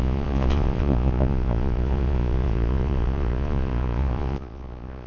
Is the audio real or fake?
fake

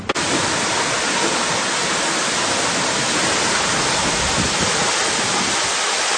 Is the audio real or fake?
real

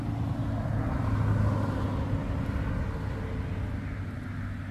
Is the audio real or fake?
real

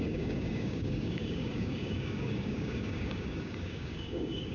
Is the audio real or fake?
fake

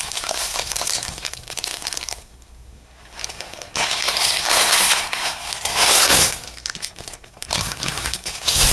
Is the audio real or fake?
fake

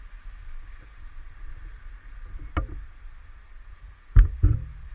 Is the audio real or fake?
real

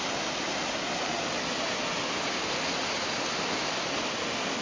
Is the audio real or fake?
real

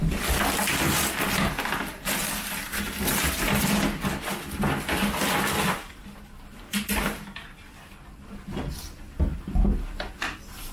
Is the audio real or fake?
real